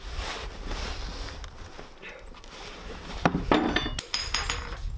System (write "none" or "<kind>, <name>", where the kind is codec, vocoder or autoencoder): none